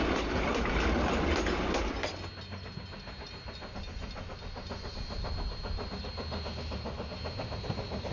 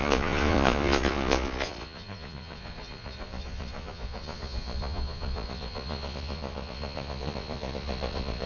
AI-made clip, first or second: second